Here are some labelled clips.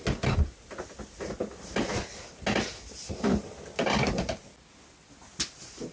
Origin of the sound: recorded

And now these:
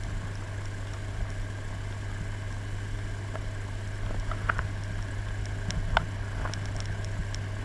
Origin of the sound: recorded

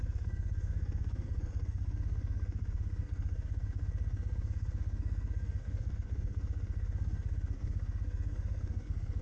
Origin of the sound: remade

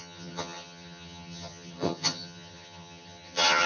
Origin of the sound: remade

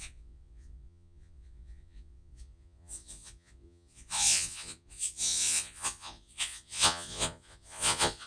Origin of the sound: remade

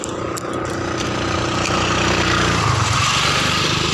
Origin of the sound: recorded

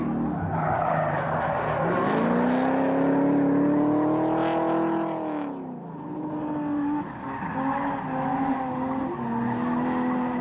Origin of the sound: recorded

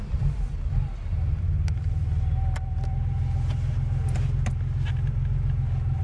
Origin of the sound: recorded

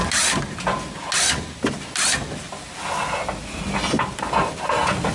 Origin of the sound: recorded